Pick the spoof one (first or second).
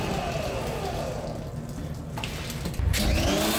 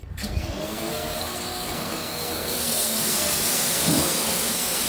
second